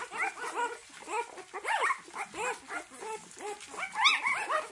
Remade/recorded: recorded